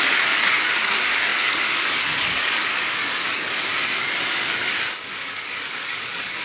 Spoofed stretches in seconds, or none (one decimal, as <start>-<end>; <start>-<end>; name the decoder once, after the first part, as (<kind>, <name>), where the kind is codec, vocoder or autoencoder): 0.0-6.4 (codec, DAC)